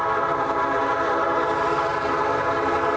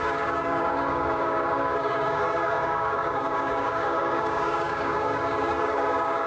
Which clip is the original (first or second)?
first